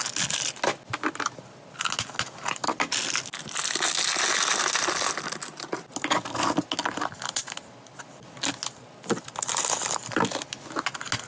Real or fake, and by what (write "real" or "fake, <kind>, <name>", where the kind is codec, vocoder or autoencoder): real